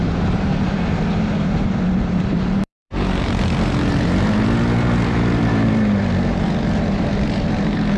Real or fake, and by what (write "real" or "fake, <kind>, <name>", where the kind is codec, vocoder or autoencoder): fake, vocoder, BigVGAN v2